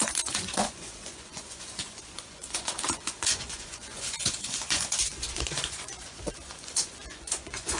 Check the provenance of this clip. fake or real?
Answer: fake